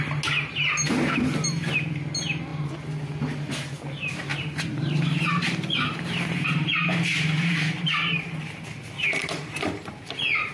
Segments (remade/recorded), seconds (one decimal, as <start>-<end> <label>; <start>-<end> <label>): 0.0-4.3 recorded; 4.3-8.6 remade; 8.6-9.2 recorded; 9.2-10.5 remade